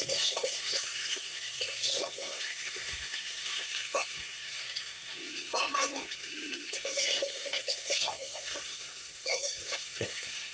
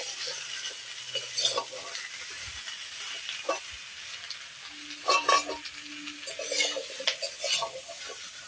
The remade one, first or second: first